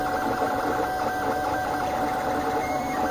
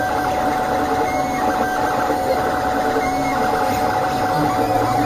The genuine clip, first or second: second